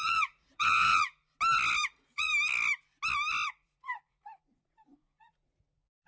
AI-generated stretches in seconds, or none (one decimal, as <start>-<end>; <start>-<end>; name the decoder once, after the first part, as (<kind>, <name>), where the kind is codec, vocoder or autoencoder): 0.0-1.2 (vocoder, Vocos); 1.9-2.3; 3.5-6.1